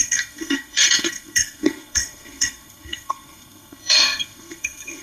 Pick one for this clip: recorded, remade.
remade